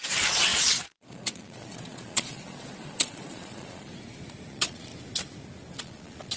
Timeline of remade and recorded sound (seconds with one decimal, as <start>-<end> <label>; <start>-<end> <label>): 0.0-3.9 remade; 3.9-4.5 recorded; 4.5-4.9 remade; 4.9-5.8 recorded; 5.8-6.4 remade